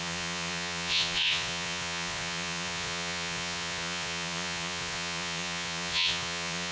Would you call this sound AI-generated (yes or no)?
yes